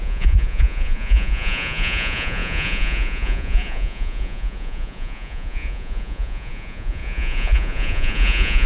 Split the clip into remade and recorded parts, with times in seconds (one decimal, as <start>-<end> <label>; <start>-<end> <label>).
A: 0.0-8.7 remade